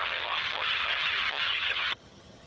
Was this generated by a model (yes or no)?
yes